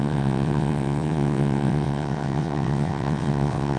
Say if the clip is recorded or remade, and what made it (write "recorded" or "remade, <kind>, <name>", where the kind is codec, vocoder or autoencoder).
remade, vocoder, WaveNeXt